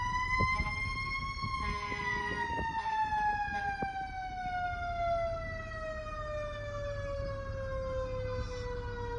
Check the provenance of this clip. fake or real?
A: real